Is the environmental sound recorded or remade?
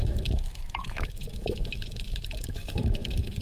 remade